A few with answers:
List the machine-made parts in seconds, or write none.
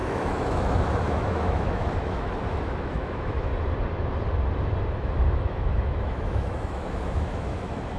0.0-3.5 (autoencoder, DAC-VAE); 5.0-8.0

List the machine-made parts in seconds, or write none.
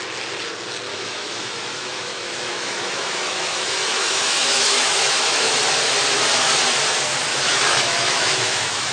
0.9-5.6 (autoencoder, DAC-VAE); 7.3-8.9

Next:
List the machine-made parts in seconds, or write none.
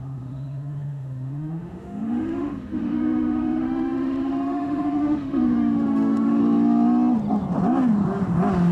0.0-6.4 (autoencoder, DAC-VAE)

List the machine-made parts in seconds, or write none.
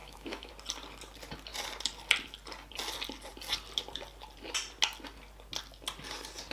0.0-0.5 (autoencoder, DAC-VAE)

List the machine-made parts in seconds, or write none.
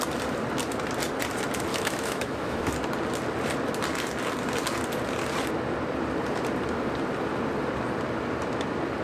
1.7-2.7 (autoencoder, DAC-VAE)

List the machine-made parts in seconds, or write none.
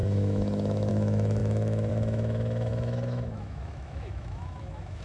0.0-5.0 (autoencoder, DAC-VAE)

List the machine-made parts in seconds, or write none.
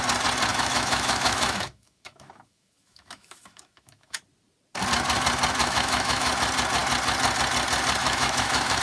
0.5-4.2 (autoencoder, DAC-VAE); 5.6-6.3; 8.0-8.8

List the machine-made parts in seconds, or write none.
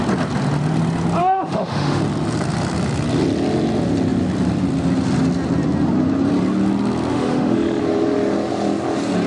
1.2-2.0 (autoencoder, DAC-VAE); 7.1-7.8